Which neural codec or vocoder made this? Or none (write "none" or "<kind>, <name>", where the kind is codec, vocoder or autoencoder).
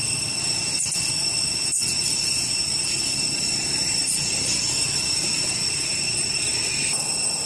none